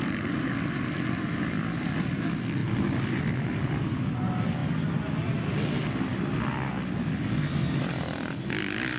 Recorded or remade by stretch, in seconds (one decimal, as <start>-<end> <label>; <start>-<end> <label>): 0.0-9.0 recorded